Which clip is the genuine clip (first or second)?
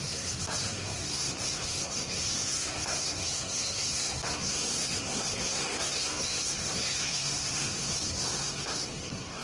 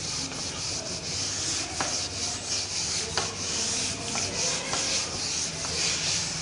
second